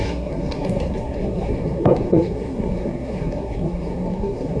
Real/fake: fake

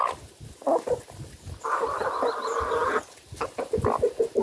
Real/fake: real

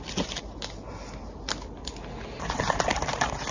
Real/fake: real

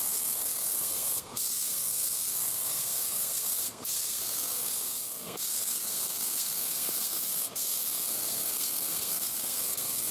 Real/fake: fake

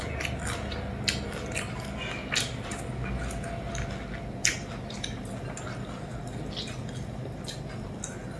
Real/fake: real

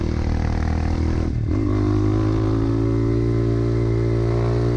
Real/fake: real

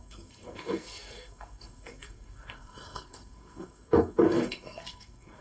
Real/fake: fake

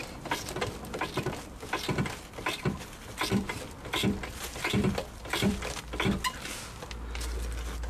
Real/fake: real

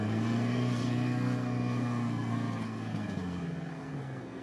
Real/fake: fake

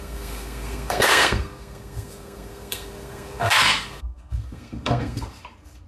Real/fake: fake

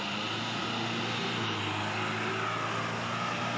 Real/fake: real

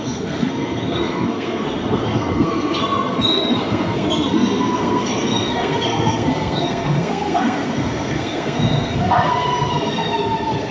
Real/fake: fake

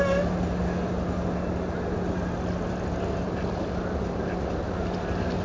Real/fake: real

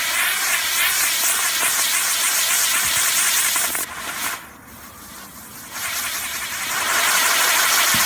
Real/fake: real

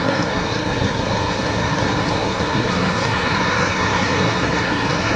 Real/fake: fake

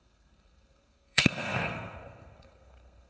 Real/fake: fake